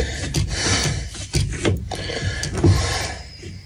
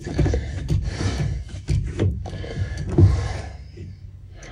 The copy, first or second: second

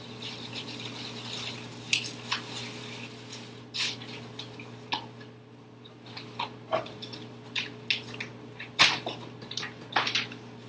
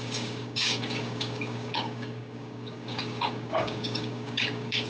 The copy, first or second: second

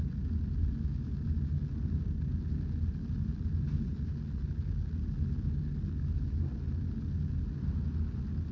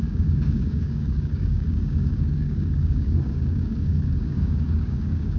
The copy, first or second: second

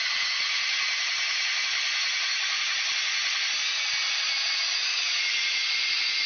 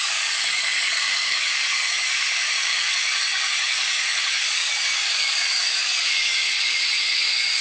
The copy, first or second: second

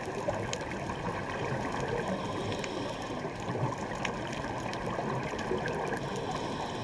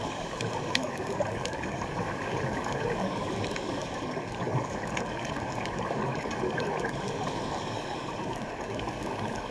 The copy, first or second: second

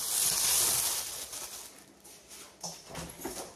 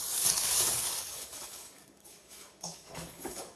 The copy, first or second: second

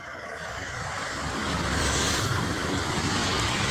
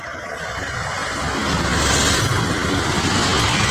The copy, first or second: first